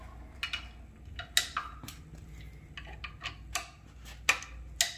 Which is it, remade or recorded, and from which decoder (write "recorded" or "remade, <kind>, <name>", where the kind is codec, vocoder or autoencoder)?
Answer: recorded